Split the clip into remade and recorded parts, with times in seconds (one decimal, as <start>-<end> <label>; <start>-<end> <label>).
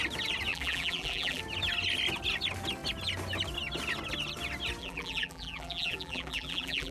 0.0-0.5 recorded; 0.5-1.4 remade; 1.4-4.8 recorded; 4.8-6.9 remade